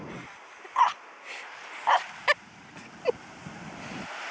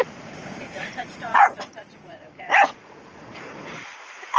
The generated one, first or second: second